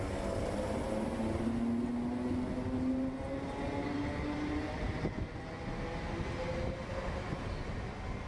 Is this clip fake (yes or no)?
no